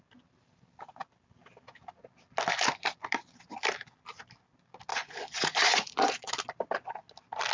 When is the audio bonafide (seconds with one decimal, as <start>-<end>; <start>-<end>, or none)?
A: 0.0-4.9; 6.3-7.5